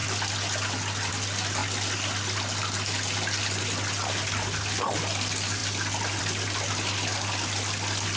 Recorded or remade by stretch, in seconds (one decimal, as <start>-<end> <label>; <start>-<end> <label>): 0.0-8.2 recorded